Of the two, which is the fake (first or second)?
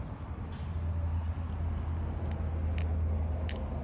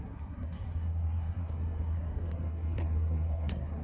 second